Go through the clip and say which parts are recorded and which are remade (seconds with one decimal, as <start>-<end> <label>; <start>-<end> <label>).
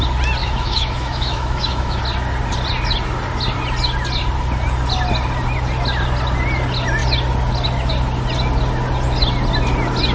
0.0-0.4 recorded; 0.4-2.0 remade; 2.0-10.1 recorded